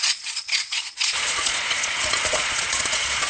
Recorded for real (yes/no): no